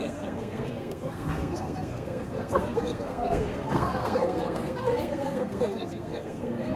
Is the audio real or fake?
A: fake